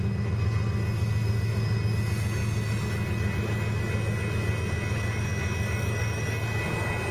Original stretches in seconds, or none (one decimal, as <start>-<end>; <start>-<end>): 0.0-7.1